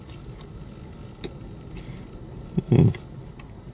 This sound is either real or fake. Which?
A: real